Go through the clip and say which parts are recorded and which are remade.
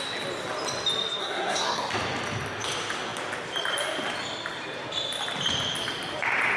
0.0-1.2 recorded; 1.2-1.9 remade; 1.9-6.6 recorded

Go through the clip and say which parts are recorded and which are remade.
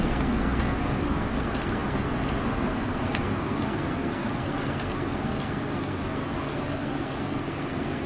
0.0-8.1 remade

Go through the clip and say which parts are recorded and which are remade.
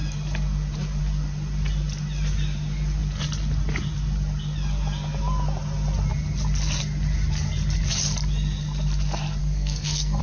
0.0-9.4 recorded; 9.4-10.2 remade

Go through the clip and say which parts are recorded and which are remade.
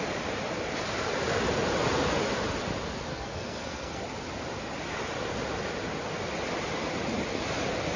0.0-3.1 recorded; 3.1-4.0 remade; 4.0-8.0 recorded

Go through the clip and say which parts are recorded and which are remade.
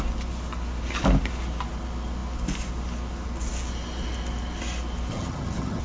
0.0-5.1 recorded; 5.1-5.8 remade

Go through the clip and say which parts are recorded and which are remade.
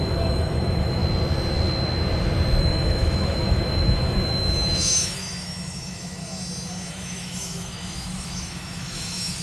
0.0-1.0 remade; 1.0-2.6 recorded; 2.6-6.2 remade; 6.2-6.9 recorded; 6.9-9.4 remade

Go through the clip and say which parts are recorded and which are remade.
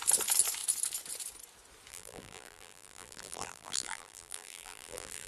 0.0-1.9 recorded; 1.9-5.3 remade